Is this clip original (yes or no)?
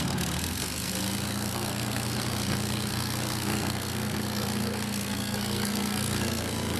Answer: no